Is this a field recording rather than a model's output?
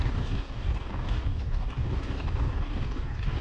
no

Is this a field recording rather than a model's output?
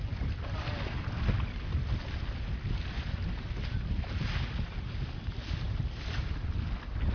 yes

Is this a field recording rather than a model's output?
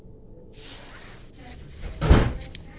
yes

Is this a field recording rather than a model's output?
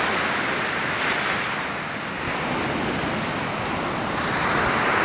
yes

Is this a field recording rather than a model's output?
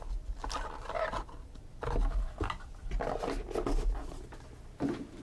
yes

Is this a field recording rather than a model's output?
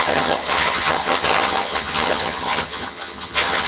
no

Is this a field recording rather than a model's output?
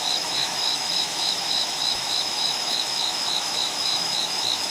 no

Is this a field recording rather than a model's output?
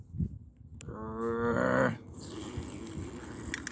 yes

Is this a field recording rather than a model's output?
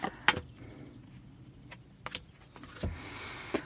yes